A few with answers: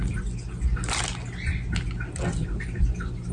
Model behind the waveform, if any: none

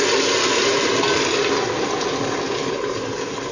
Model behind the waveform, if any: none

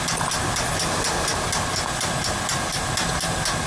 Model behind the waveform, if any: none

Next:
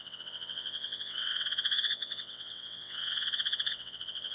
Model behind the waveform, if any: vocoder, WaveNeXt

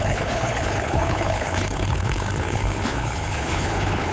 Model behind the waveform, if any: codec, HILCodec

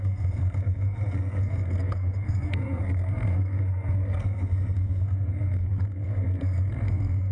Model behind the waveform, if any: codec, SNAC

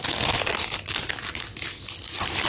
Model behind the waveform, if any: none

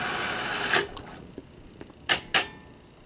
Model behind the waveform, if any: none